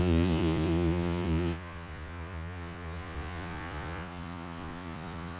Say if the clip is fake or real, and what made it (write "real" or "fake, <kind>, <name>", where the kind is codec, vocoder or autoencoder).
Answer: fake, vocoder, Vocos